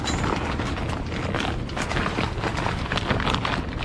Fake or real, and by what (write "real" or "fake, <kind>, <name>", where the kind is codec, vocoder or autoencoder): fake, vocoder, BigVGAN v2